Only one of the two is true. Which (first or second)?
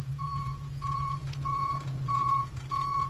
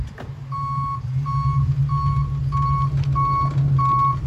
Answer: second